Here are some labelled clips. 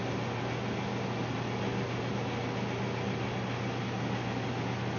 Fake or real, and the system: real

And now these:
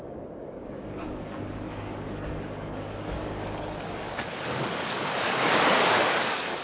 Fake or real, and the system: fake, codec, DAC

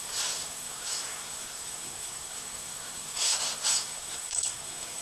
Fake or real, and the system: fake, codec, SNAC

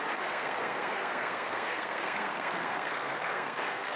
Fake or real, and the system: fake, codec, SNAC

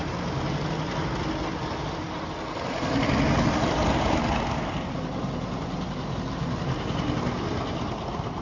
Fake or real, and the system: real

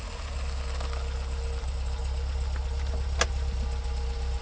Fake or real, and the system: real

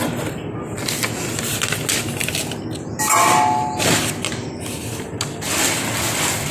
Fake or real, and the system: real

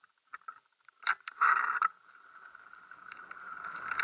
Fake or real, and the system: real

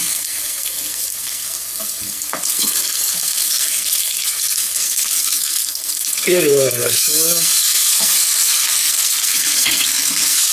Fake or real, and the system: fake, codec, SNAC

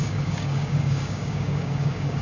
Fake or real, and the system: fake, codec, DAC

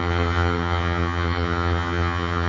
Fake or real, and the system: fake, vocoder, HiFi-GAN